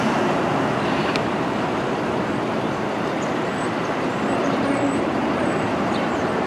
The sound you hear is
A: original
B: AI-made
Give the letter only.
B